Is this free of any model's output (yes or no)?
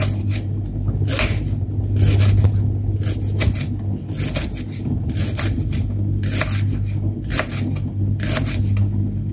yes